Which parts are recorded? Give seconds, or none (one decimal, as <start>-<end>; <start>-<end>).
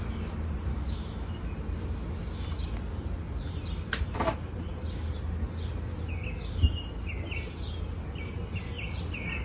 0.0-0.7; 1.5-9.4